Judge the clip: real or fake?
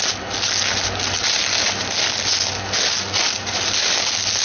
real